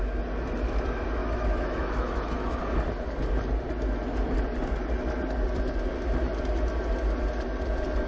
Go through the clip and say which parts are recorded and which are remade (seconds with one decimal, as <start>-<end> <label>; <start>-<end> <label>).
0.0-1.2 recorded; 1.2-2.6 remade; 2.6-8.1 recorded